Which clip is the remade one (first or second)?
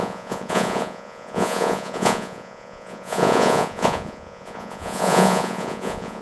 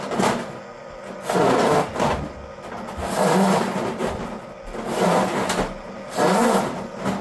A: first